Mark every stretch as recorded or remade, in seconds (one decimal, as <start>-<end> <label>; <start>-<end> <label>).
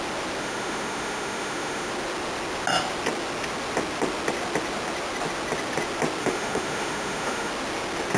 0.0-0.4 recorded; 0.4-1.9 remade; 1.9-6.2 recorded; 6.2-7.5 remade; 7.5-8.2 recorded